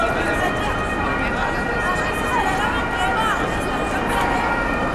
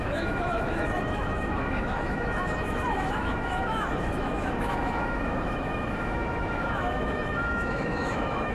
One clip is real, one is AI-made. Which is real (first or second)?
first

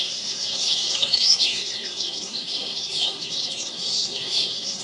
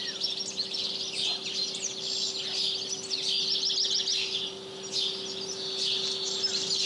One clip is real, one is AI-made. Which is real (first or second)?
second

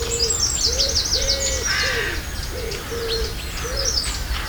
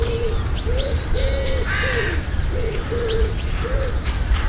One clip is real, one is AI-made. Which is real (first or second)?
first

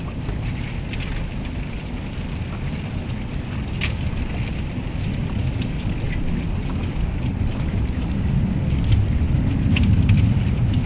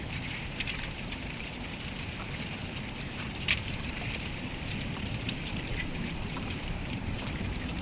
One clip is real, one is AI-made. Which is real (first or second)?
first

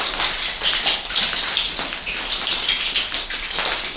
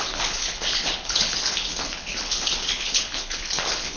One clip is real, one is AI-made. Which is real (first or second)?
first